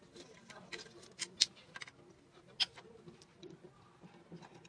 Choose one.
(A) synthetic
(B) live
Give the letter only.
B